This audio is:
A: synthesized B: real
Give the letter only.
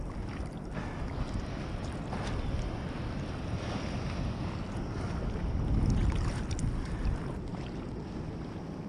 B